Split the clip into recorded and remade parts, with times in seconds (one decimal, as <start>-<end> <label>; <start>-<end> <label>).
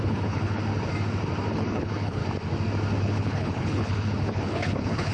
0.0-0.6 remade; 0.6-1.5 recorded; 1.5-2.2 remade; 2.2-3.0 recorded; 3.0-5.1 remade